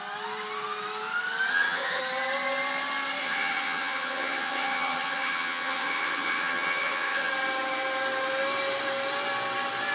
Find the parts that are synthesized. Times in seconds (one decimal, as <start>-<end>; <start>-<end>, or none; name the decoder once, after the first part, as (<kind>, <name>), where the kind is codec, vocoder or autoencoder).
1.5-2.0 (vocoder, HiFi-GAN); 3.2-7.3